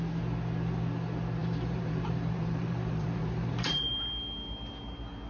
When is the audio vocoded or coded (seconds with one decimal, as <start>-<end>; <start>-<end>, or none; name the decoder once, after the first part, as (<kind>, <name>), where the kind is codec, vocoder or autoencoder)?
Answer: 1.4-3.9 (vocoder, BigVGAN v2)